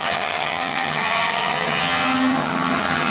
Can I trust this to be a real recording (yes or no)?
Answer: no